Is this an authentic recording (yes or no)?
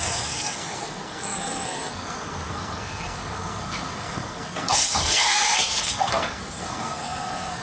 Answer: no